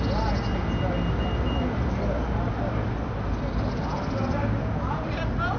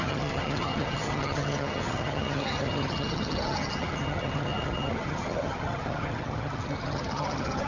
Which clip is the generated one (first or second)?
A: second